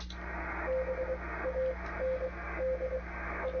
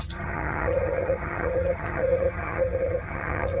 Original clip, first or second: first